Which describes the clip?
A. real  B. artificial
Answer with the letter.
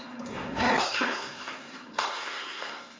B